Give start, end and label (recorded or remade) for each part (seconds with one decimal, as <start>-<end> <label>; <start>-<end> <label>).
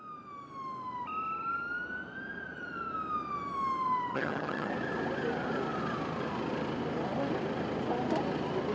0.0-4.1 recorded; 4.1-4.7 remade; 4.7-8.7 recorded